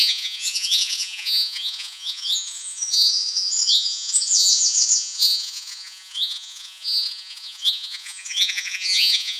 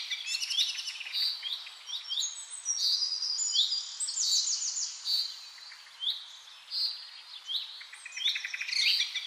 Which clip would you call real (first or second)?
second